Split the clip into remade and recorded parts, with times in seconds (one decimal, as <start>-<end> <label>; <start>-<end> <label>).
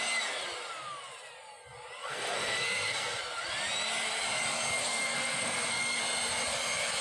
0.0-2.0 recorded; 2.0-3.2 remade; 3.2-4.8 recorded; 4.8-6.0 remade; 6.0-7.0 recorded